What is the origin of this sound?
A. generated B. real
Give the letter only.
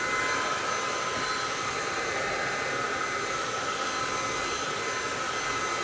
B